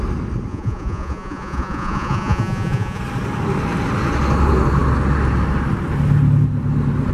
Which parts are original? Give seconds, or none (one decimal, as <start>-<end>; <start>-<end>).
0.0-0.5; 3.0-7.1